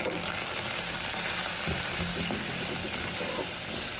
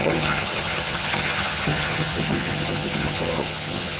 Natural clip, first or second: first